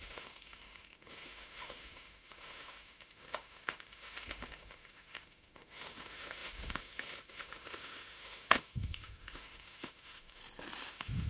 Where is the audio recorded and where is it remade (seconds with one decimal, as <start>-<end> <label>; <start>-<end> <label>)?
0.0-10.4 remade; 10.4-10.9 recorded; 10.9-11.3 remade